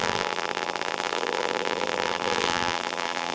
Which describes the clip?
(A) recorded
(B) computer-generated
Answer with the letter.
B